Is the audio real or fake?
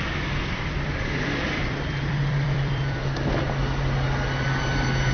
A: fake